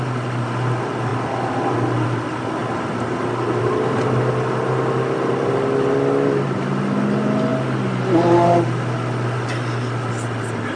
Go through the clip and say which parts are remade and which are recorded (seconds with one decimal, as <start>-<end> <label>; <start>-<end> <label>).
0.0-10.8 recorded